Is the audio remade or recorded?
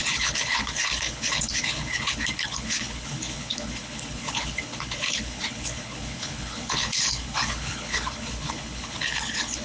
remade